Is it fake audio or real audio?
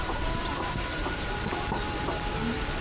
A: real